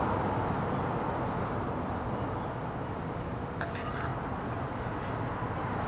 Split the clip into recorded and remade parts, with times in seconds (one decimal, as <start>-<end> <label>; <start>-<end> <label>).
0.0-5.9 recorded